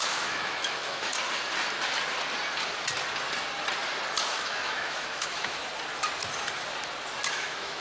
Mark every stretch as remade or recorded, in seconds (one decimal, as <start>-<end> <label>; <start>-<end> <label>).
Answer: 0.0-1.1 remade; 1.1-4.2 recorded; 4.2-5.6 remade; 5.6-7.3 recorded; 7.3-7.8 remade